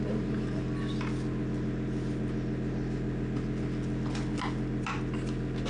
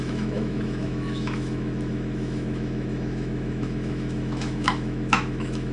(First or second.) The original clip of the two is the first